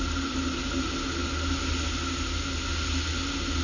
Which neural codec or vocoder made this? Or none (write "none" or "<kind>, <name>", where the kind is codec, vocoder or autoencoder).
none